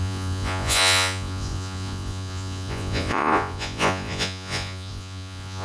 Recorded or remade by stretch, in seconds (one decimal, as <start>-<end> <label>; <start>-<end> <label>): 0.0-5.6 remade